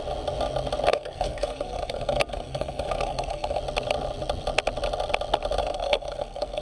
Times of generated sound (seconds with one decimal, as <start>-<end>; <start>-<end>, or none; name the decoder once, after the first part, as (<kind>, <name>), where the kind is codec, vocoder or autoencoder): 0.9-3.6 (codec, SNAC); 5.6-6.6